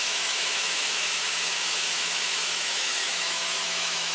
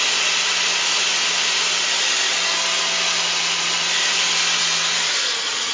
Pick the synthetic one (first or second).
first